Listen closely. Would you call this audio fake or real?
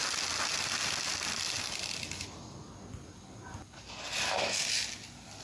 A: real